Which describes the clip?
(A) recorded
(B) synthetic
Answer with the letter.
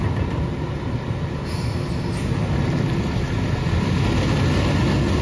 A